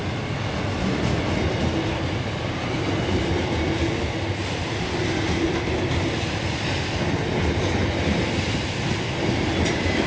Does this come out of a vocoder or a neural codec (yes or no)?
no